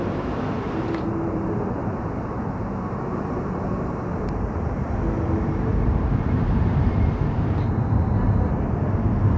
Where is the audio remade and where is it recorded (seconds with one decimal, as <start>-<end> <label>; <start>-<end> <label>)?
0.0-9.4 remade